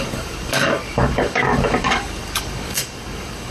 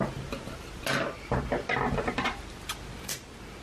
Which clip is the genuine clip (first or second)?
second